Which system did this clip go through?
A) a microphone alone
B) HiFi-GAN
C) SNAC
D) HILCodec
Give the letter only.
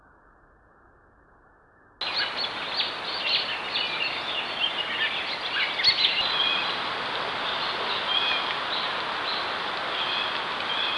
A